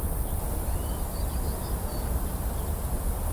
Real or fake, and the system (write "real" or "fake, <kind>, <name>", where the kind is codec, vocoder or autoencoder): real